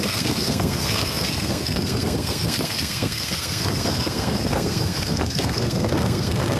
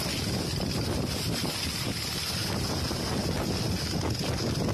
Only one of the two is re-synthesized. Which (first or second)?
first